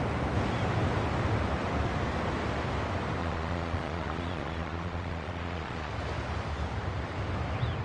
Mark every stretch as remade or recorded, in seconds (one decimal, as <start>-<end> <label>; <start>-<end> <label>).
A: 0.0-3.2 recorded; 3.2-5.9 remade; 5.9-7.8 recorded